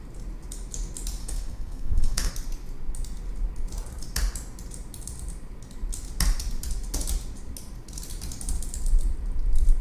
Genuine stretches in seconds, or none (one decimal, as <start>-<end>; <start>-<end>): 0.0-1.2; 2.3-9.8